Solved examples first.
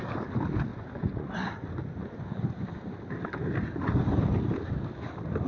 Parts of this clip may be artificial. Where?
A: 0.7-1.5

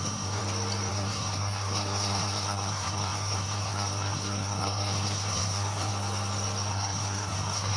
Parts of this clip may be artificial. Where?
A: 0.0-0.4; 0.9-5.9; 6.7-7.8

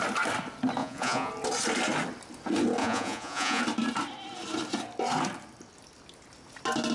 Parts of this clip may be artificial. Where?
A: 0.8-1.3; 2.8-3.6

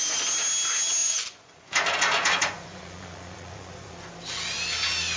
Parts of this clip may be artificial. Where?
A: 1.0-4.1

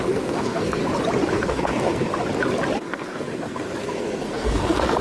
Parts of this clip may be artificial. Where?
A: 0.0-0.8; 1.3-2.1; 2.8-5.0